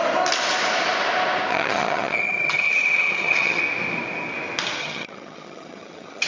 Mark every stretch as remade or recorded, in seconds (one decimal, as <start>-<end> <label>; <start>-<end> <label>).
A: 0.0-1.5 recorded; 1.5-3.6 remade; 3.6-4.8 recorded; 4.8-6.3 remade